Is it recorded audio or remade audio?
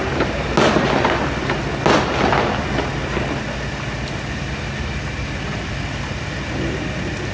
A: recorded